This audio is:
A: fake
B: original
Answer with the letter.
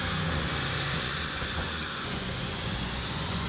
A